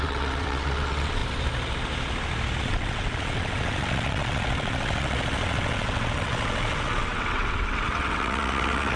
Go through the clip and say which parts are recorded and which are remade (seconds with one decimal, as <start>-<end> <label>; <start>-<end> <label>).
0.0-1.2 remade; 1.2-2.6 recorded; 2.6-9.0 remade